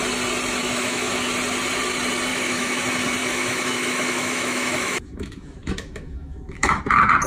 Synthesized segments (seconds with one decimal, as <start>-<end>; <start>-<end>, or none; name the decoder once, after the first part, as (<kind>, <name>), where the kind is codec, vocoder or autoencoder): 0.6-1.3 (autoencoder, DAC-VAE); 2.3-2.8; 3.2-6.8